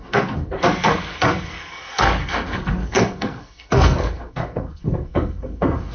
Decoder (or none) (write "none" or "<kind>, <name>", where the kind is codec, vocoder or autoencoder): codec, SNAC